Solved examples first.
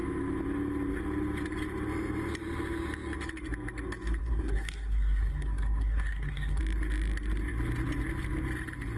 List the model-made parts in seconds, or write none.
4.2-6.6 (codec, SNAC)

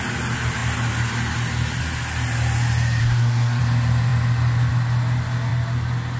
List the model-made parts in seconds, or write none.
3.0-3.6 (codec, SNAC)

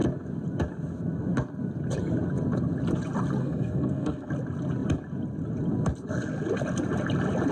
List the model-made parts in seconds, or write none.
3.4-4.3 (codec, SNAC)